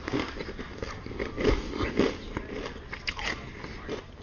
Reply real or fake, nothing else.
real